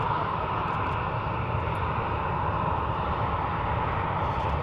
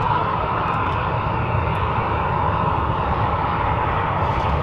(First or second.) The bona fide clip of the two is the first